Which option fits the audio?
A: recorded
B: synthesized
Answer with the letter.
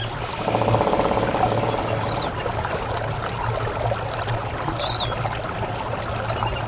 A